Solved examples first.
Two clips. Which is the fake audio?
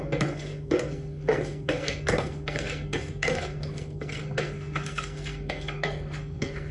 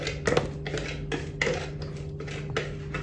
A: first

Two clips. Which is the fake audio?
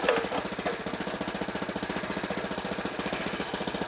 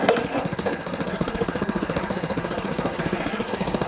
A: second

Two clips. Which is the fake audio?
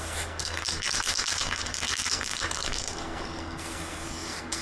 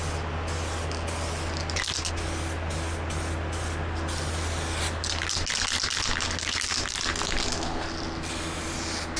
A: first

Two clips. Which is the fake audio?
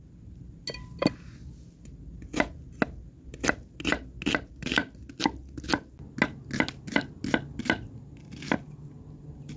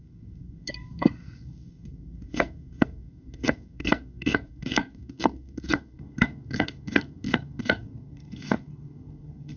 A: second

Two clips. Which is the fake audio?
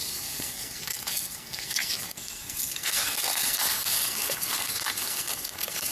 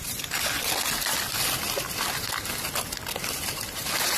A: first